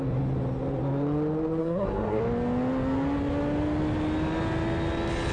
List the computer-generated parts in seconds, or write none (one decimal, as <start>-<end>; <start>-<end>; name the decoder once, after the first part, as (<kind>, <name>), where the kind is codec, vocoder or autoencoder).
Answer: 1.6-2.2 (codec, SNAC)